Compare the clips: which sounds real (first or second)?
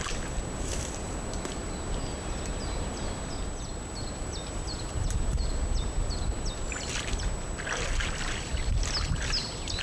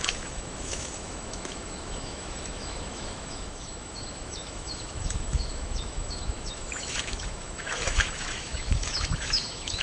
first